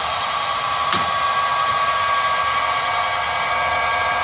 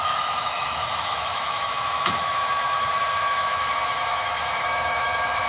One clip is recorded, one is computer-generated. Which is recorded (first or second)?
first